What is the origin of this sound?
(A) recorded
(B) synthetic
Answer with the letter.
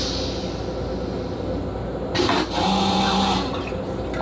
A